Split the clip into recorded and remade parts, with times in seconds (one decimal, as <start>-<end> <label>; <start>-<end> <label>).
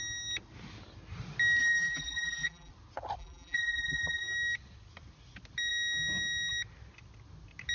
0.0-1.6 recorded; 1.6-2.7 remade; 2.7-3.2 recorded; 3.2-4.2 remade; 4.2-7.7 recorded